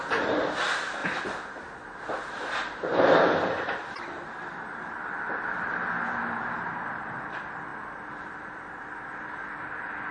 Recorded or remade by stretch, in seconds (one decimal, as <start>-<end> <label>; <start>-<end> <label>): 0.0-1.0 remade; 1.0-4.3 recorded; 4.3-10.1 remade